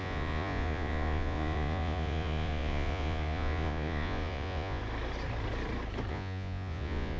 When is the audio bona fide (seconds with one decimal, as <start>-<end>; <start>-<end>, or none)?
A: 4.8-6.1